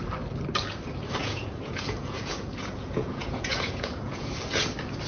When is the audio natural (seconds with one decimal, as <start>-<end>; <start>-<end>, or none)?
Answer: 0.0-1.2; 4.3-5.1